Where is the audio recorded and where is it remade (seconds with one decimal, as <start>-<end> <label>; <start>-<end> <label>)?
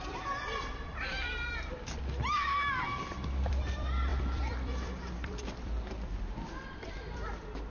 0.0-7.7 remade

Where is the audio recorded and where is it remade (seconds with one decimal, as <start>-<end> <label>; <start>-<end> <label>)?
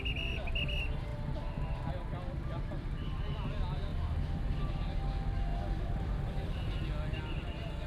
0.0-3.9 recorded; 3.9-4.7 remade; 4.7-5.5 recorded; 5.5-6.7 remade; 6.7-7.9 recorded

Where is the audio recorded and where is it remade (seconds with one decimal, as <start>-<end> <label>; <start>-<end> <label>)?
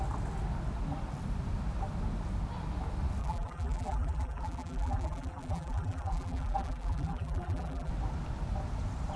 0.0-3.2 recorded; 3.2-7.9 remade; 7.9-9.2 recorded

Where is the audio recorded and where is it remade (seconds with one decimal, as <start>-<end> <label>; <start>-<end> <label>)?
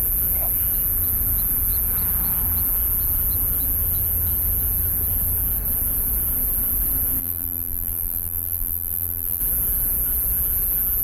0.0-7.2 recorded; 7.2-9.4 remade; 9.4-11.0 recorded